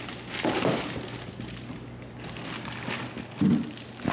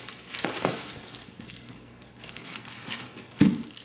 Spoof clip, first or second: second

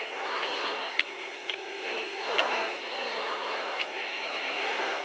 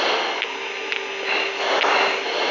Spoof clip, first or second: first